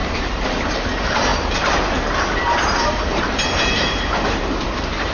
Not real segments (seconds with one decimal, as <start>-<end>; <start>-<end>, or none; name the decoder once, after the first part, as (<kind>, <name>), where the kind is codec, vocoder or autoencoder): 0.0-5.1 (vocoder, BigVGAN v2)